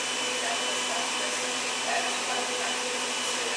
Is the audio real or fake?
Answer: real